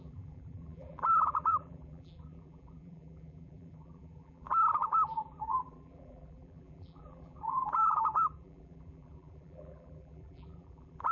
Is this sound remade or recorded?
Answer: remade